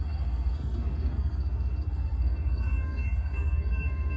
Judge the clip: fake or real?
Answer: fake